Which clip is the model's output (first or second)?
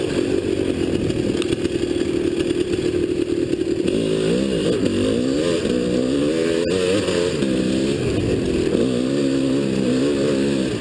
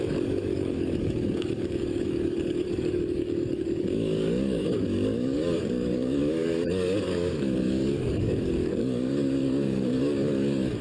second